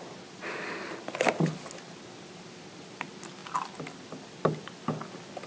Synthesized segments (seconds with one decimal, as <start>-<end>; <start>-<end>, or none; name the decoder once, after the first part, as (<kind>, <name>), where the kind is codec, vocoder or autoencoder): none